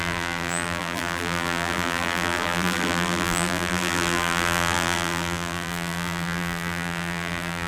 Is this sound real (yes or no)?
no